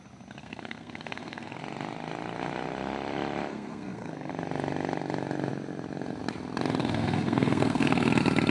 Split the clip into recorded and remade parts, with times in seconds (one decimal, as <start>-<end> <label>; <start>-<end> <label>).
0.0-0.4 recorded; 0.4-1.6 remade; 1.6-3.5 recorded; 3.5-4.3 remade; 4.3-6.8 recorded; 6.8-8.1 remade; 8.1-8.5 recorded